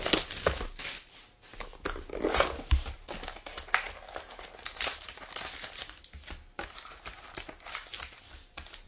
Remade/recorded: recorded